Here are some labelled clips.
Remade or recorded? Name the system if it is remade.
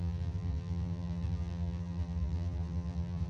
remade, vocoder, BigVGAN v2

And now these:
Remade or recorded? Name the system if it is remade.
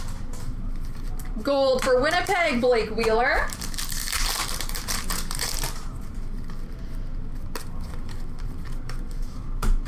remade, vocoder, BigVGAN v2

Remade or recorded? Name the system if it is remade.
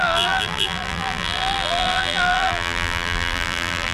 remade, vocoder, BigVGAN v2